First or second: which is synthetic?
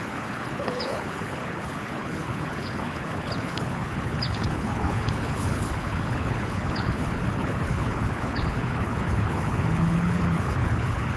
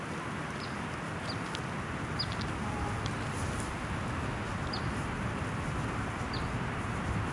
first